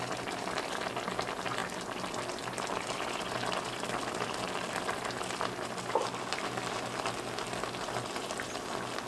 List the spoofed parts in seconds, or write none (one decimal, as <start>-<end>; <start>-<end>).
none